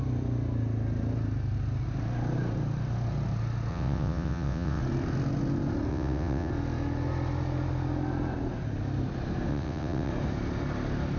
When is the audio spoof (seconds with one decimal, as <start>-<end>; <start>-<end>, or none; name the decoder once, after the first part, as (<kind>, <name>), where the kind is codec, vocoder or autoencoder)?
3.7-4.8 (vocoder, WaveNeXt); 5.9-6.5; 9.5-10.1